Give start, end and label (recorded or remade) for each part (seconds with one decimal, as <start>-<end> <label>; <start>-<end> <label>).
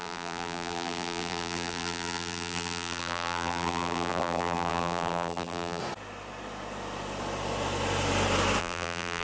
0.0-5.8 remade; 5.8-8.6 recorded; 8.6-9.2 remade